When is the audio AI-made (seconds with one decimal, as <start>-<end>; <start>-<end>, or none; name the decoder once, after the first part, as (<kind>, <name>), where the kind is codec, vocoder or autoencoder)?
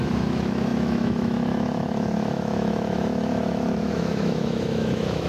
0.0-5.3 (autoencoder, DAC-VAE)